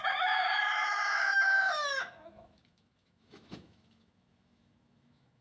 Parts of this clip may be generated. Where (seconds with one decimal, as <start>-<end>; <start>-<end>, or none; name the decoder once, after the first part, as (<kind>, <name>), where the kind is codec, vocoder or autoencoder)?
0.0-5.4 (autoencoder, DAC-VAE)